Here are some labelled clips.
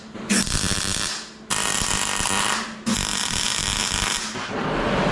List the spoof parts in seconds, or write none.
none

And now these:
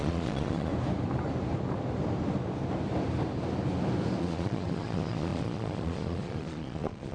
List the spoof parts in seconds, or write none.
0.0-0.7 (vocoder, Vocos); 4.2-7.1

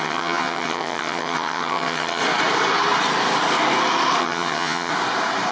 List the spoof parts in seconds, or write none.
0.0-2.2 (vocoder, HiFi-GAN); 4.2-4.9

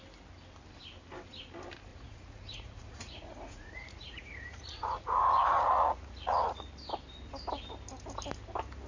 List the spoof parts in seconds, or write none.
1.9-6.7 (vocoder, Vocos)

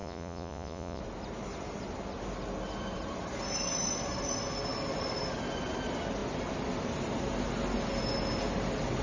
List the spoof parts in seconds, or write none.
0.0-1.0 (vocoder, Vocos)